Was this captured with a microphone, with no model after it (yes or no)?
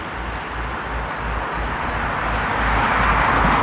yes